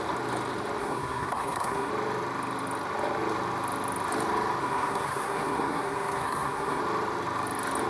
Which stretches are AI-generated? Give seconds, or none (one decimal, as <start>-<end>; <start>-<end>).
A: 0.8-1.9; 4.6-6.8